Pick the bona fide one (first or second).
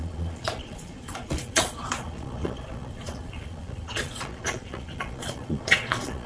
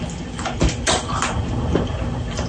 second